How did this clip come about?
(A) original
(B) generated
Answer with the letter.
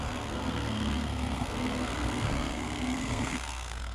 B